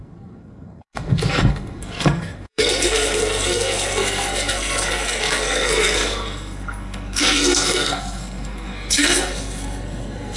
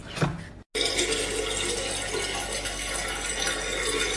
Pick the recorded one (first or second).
second